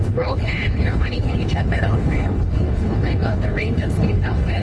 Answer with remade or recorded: remade